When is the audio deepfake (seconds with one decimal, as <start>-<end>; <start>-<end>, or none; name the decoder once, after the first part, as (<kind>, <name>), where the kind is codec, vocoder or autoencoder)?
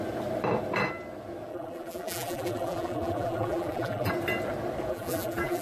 1.5-4.1 (vocoder, BigVGAN v2); 4.9-5.6